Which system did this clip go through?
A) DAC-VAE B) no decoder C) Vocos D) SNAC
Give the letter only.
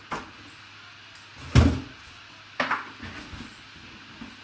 B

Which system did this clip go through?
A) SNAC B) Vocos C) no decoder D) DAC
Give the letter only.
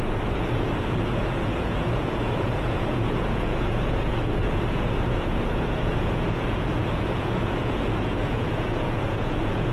B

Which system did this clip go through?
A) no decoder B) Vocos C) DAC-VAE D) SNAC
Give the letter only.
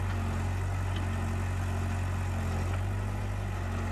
A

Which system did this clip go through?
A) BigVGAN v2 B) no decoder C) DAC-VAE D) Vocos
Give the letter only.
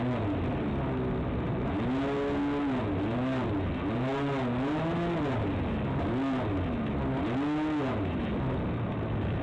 B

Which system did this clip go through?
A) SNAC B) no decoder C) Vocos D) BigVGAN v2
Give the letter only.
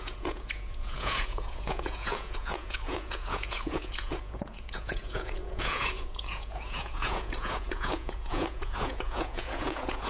C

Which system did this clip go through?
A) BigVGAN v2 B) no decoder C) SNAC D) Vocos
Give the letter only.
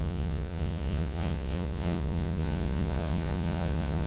D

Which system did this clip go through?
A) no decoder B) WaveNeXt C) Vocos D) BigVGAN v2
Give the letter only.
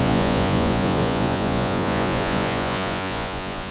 C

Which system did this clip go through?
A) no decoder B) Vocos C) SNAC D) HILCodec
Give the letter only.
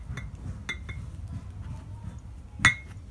A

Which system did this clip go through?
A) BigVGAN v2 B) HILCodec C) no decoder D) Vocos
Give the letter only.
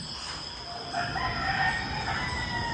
C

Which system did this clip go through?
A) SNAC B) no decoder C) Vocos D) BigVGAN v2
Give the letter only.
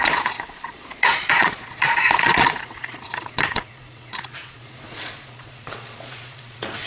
C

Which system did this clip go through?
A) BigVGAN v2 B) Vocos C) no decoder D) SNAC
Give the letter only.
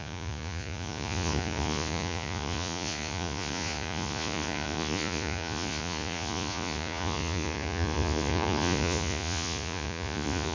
B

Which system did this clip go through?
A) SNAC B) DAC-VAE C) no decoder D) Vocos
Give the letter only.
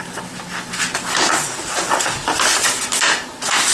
C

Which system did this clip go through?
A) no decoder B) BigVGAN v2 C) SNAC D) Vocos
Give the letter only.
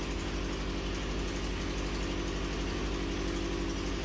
A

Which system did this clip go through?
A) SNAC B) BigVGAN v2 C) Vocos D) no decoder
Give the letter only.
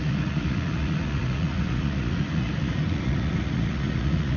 C